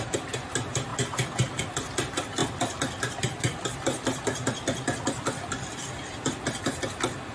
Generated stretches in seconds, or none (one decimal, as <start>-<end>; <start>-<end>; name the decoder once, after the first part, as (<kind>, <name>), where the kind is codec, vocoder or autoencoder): 2.4-6.8 (vocoder, BigVGAN v2)